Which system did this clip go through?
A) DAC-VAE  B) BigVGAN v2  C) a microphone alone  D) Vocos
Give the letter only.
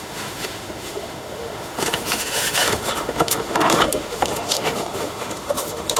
A